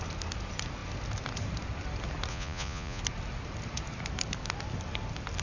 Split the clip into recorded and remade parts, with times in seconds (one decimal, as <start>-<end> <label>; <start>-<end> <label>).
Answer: 0.0-2.3 recorded; 2.3-3.0 remade; 3.0-5.4 recorded